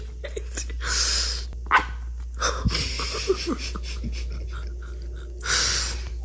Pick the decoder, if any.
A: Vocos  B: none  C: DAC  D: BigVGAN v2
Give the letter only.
B